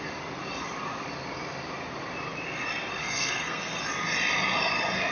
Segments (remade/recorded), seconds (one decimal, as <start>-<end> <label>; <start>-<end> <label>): 0.0-3.0 recorded; 3.0-3.8 remade; 3.8-5.1 recorded